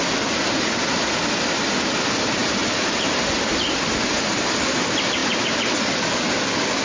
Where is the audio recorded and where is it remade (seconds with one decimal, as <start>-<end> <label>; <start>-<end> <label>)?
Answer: 0.0-6.8 recorded